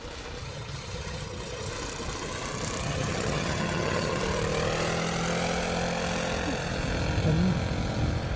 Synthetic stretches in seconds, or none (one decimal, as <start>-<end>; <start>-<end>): 0.4-1.7; 2.8-4.2